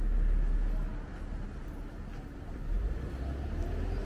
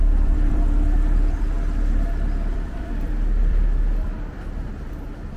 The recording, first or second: first